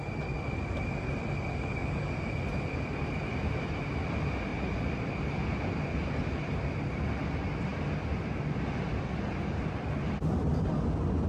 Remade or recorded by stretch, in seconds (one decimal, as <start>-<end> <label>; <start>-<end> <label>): 0.0-4.5 recorded; 4.5-5.1 remade; 5.1-11.3 recorded